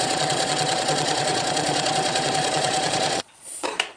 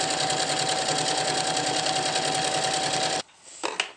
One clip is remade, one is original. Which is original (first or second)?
second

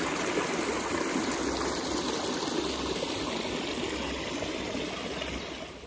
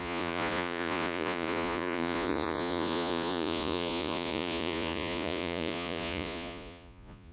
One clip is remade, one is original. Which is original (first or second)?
first